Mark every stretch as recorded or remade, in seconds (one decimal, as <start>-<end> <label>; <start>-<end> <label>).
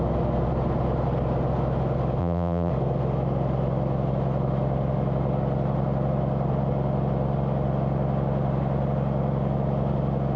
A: 0.0-2.2 recorded; 2.2-2.7 remade; 2.7-10.4 recorded